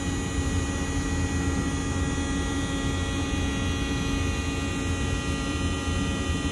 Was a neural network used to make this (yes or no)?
no